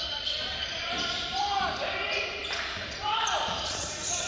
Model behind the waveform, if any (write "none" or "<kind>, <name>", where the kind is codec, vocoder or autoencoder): vocoder, BigVGAN v2